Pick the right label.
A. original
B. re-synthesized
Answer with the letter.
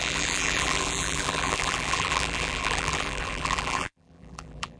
B